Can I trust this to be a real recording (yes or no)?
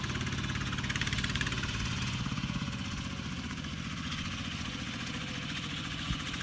no